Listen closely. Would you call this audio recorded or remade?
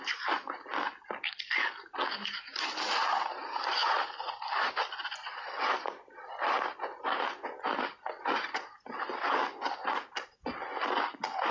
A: recorded